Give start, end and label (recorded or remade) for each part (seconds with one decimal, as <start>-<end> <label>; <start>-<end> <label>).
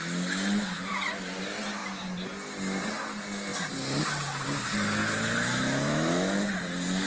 0.0-5.0 recorded; 5.0-6.4 remade; 6.4-7.1 recorded